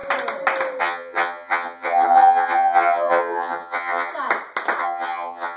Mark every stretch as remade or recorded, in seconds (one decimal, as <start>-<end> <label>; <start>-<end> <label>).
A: 0.0-0.8 recorded; 0.8-4.1 remade; 4.1-4.8 recorded; 4.8-5.6 remade